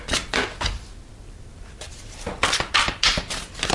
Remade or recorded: recorded